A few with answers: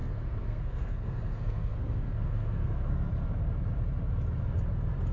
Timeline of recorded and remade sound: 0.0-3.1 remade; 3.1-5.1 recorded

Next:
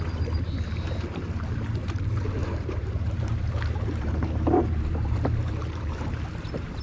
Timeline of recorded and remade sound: 0.0-2.4 recorded; 2.4-6.8 remade